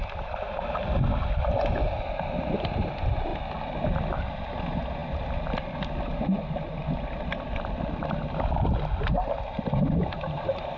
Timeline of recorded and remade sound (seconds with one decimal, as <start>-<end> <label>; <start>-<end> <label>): 0.0-10.8 recorded